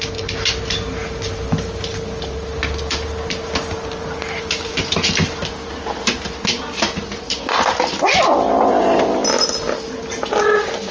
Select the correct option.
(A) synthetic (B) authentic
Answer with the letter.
B